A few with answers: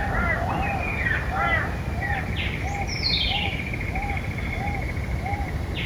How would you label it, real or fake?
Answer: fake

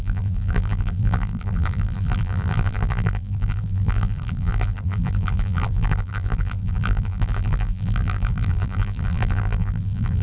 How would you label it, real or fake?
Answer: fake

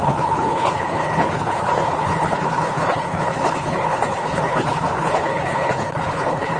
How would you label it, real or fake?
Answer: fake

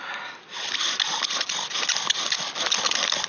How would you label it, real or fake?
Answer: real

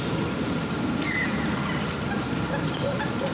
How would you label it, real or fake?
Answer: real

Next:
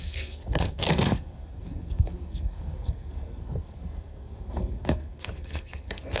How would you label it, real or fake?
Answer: fake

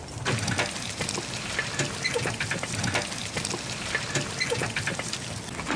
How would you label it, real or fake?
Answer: real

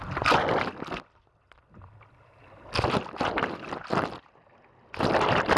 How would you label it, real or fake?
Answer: real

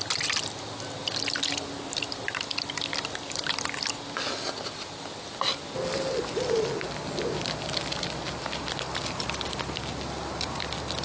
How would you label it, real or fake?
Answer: real